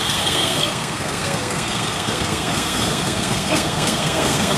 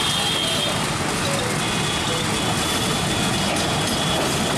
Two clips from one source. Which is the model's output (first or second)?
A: first